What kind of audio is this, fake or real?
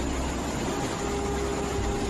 real